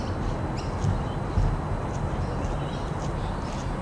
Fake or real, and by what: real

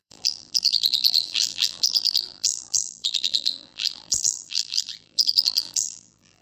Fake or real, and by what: fake, vocoder, BigVGAN v2